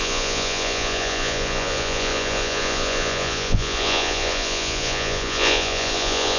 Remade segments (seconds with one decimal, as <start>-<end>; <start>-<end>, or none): 0.0-6.4